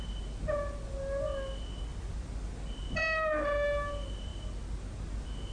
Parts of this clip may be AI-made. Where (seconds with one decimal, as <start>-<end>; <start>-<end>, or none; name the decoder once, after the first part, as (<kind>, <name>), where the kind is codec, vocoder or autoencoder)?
none